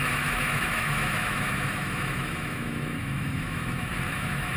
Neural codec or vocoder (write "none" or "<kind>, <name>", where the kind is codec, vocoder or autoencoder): autoencoder, DAC-VAE